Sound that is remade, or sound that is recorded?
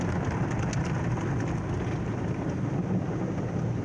recorded